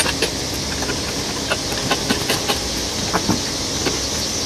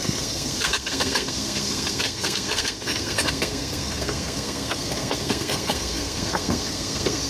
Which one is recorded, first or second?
first